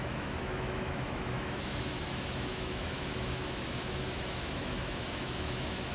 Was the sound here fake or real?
fake